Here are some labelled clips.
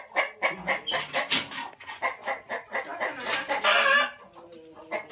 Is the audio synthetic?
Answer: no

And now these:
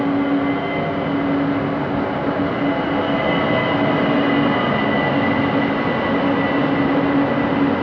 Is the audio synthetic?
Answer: no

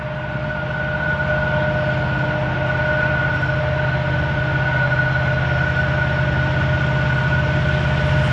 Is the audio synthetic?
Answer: no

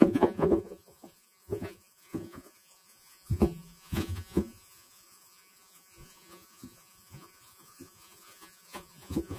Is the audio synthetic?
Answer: yes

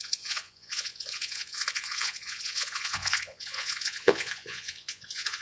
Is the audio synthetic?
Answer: yes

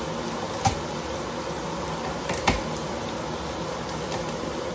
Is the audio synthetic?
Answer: no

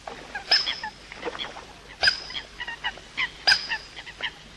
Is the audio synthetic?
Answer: no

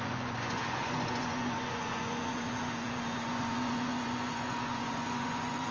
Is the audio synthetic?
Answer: yes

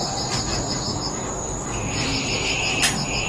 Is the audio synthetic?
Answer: no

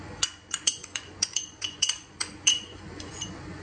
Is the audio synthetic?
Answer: yes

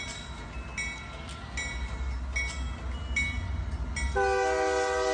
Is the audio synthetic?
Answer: no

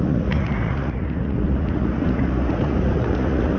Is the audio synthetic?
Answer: yes